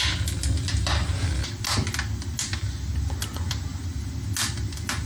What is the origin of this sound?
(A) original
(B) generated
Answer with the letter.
A